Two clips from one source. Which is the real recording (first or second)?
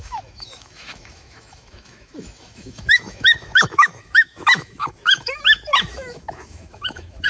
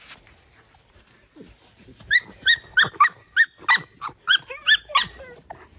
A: second